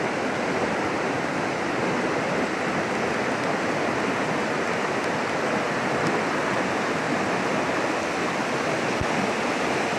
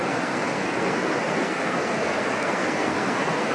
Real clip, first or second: first